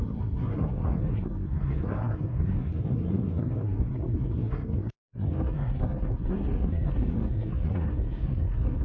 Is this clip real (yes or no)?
no